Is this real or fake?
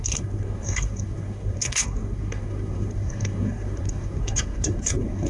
fake